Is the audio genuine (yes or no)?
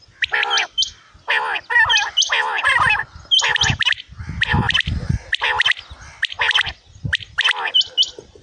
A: yes